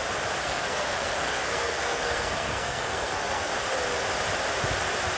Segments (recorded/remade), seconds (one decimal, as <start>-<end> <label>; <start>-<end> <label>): 0.0-0.4 recorded; 0.4-3.5 remade; 3.5-5.2 recorded